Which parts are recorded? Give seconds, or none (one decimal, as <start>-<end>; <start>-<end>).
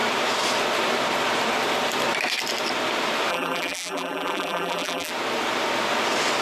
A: 0.0-3.3; 5.1-6.4